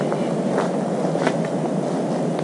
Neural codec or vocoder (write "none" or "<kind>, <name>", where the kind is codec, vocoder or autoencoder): none